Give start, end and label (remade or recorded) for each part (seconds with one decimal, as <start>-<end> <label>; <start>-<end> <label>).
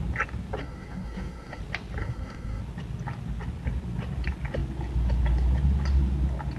0.0-0.6 recorded; 0.6-1.6 remade; 1.6-2.0 recorded; 2.0-2.6 remade; 2.6-6.6 recorded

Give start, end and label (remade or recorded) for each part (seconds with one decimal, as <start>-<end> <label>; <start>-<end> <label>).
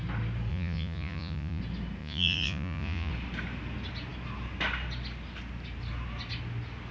0.0-0.5 recorded; 0.5-1.6 remade; 1.6-2.0 recorded; 2.0-3.1 remade; 3.1-6.9 recorded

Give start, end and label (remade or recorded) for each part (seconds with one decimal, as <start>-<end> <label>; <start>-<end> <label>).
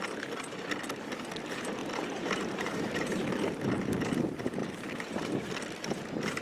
0.0-1.8 recorded; 1.8-3.3 remade; 3.3-4.6 recorded; 4.6-5.4 remade; 5.4-6.4 recorded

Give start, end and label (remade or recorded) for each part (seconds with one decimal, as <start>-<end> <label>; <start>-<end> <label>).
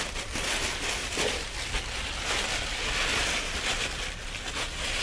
0.0-5.0 recorded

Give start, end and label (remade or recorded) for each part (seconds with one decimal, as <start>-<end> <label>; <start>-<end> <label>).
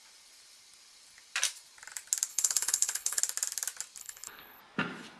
0.0-2.3 recorded; 2.3-3.2 remade; 3.2-4.0 recorded; 4.0-4.6 remade; 4.6-5.2 recorded